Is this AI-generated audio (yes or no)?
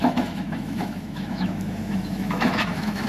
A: yes